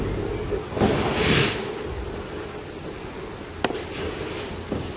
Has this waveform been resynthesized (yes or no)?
no